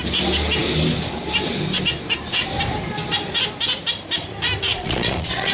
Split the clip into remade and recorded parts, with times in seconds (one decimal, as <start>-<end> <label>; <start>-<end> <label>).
0.0-4.7 recorded; 4.7-5.5 remade